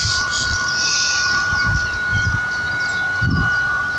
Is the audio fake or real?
real